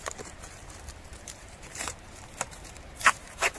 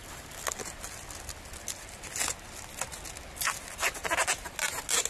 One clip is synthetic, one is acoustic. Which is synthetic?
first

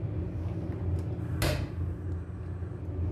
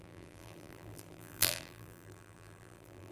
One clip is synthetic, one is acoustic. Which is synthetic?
second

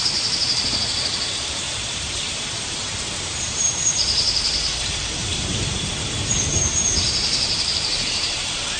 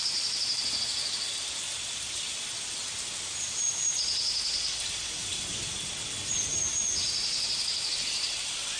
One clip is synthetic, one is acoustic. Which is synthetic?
first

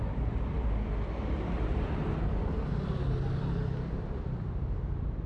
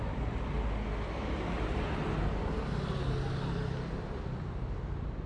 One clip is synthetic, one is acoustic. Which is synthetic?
first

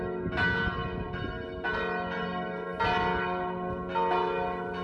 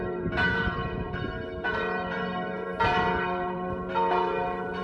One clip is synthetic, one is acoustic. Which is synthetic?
second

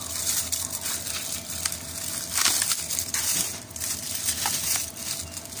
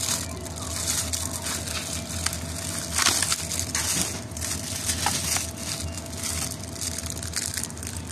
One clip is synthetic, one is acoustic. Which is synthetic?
first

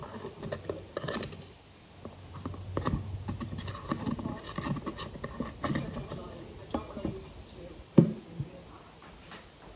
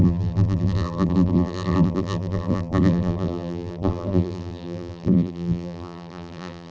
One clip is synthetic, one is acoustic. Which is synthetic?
second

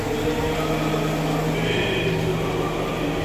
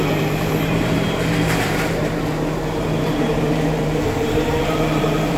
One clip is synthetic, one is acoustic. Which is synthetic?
second